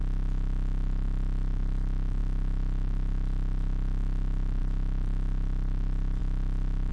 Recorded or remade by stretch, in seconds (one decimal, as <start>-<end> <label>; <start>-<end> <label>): 0.0-6.9 recorded